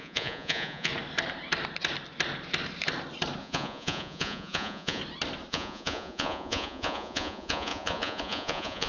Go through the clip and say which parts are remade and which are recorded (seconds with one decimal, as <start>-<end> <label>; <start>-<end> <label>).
0.0-0.9 remade; 0.9-3.4 recorded; 3.4-5.0 remade; 5.0-5.5 recorded; 5.5-8.9 remade